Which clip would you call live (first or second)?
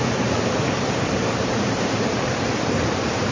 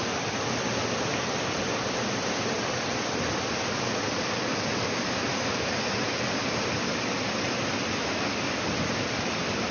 second